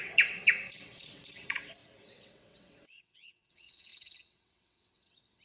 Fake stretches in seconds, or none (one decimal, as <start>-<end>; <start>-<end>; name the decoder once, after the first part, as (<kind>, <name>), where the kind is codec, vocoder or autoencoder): 0.0-5.4 (vocoder, WaveNeXt)